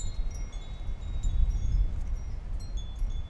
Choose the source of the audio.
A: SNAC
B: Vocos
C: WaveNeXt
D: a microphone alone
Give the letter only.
D